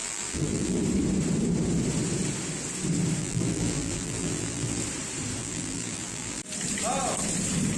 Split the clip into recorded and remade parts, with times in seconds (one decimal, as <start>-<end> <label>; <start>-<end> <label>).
0.0-0.8 remade; 0.8-3.2 recorded; 3.2-4.8 remade; 4.8-5.4 recorded; 5.4-6.4 remade; 6.4-7.8 recorded